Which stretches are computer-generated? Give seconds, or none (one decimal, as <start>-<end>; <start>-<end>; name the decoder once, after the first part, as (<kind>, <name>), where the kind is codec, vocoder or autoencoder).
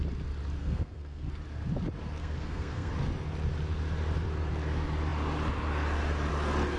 0.6-1.3 (codec, SNAC); 2.2-2.9